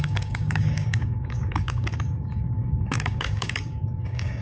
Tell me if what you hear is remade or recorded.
remade